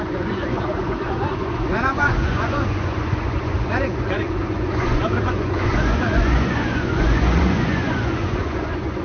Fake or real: fake